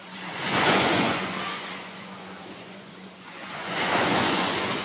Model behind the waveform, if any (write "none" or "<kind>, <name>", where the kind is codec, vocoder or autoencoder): vocoder, Vocos